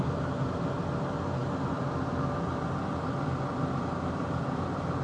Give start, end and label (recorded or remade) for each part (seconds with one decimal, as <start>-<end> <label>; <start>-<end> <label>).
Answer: 0.0-5.0 recorded